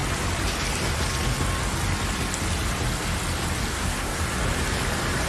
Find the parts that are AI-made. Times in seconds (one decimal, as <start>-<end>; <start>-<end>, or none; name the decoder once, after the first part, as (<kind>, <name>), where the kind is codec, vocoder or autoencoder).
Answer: 3.7-4.2 (codec, SNAC)